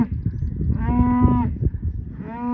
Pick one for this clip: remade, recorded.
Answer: recorded